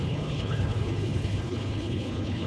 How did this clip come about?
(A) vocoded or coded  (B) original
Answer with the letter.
A